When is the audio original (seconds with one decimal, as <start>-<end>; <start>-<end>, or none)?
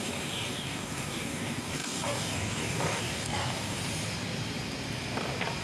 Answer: 3.8-5.6